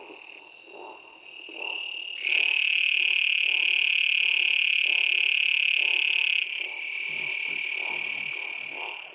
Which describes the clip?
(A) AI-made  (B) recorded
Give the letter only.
B